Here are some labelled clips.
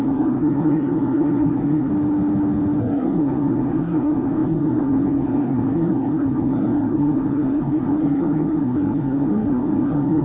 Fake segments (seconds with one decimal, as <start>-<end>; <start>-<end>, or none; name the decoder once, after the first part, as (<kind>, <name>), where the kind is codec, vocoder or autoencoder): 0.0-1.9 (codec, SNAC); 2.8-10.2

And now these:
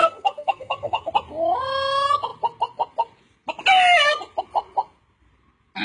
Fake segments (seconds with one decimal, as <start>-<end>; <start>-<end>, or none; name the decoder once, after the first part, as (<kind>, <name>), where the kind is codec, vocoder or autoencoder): 0.0-1.1 (codec, SNAC)

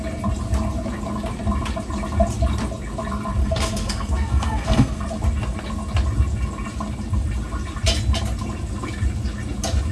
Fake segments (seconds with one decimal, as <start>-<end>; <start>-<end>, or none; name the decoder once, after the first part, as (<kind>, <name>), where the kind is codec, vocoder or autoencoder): 3.4-5.0 (codec, SNAC)

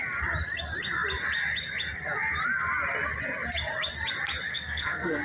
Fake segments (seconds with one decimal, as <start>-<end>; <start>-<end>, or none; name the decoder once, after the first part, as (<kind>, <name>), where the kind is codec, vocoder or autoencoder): 4.5-5.2 (codec, SNAC)

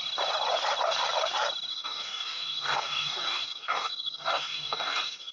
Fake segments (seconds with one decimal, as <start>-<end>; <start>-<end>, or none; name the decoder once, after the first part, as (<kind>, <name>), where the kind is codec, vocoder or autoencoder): 1.7-5.3 (codec, DAC)

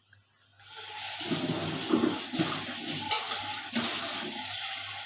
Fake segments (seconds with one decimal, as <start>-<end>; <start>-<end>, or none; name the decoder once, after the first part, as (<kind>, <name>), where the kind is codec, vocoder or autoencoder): none